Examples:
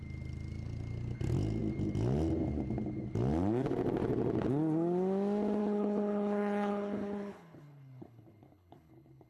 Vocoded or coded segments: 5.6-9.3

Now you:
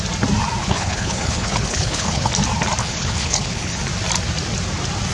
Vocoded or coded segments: 0.6-2.3; 2.8-3.8

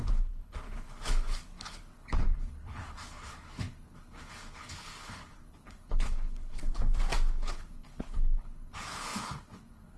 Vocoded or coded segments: 0.0-6.6; 7.3-10.0

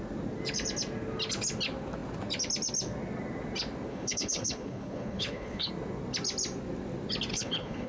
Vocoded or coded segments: 3.9-5.7; 7.3-7.9